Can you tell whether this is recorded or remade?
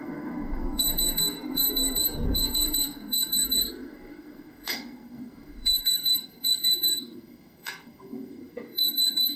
remade